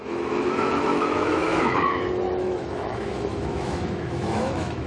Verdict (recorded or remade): remade